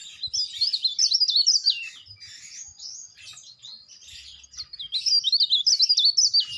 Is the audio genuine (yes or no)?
yes